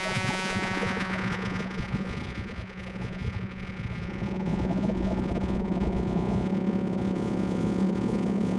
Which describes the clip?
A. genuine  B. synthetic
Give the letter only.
B